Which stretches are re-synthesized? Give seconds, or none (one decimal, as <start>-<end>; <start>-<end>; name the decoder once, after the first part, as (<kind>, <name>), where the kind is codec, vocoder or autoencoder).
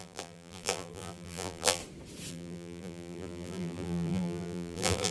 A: 0.0-1.8 (vocoder, BigVGAN v2); 2.3-5.1